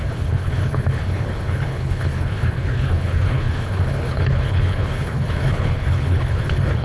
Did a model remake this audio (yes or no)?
yes